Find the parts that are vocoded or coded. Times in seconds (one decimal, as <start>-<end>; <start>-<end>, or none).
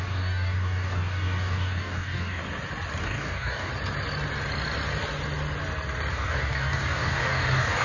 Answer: 0.0-2.4; 3.0-3.7; 6.1-7.8